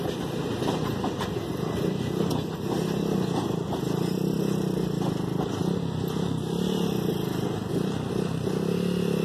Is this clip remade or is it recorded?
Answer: recorded